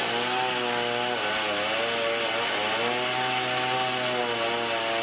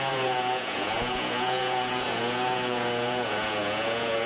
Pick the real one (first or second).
first